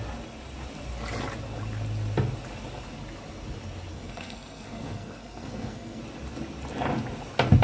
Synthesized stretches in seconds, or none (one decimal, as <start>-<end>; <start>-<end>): 3.9-6.0